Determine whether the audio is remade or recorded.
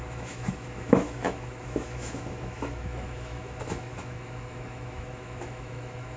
remade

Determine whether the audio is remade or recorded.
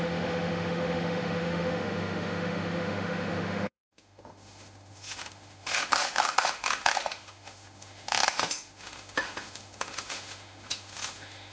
remade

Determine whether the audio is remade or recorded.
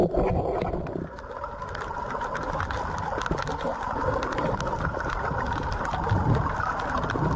recorded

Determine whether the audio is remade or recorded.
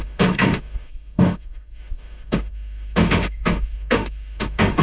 remade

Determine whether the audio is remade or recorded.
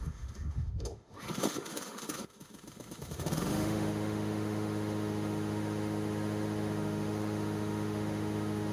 remade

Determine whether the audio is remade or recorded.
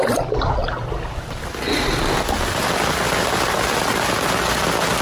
recorded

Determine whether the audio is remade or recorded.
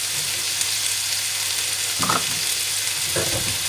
recorded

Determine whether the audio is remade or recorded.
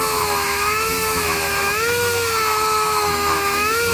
remade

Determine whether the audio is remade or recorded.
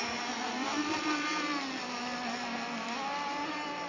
recorded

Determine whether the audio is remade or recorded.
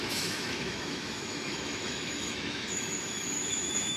remade